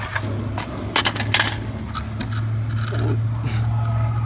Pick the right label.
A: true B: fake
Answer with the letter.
A